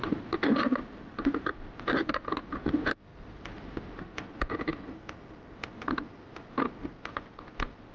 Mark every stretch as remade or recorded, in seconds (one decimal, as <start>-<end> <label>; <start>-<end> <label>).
0.0-2.2 remade; 2.2-7.9 recorded

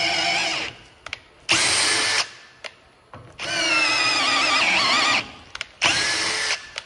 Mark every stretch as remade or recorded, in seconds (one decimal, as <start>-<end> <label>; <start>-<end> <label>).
0.0-6.9 recorded

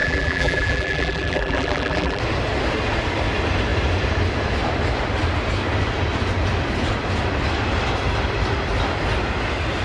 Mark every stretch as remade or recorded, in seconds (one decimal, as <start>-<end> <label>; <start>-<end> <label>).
0.0-2.2 remade; 2.2-9.8 recorded

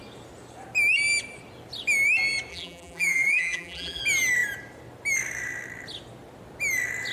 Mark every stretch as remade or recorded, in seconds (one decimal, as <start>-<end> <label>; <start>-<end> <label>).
0.0-2.5 recorded; 2.5-4.0 remade; 4.0-7.1 recorded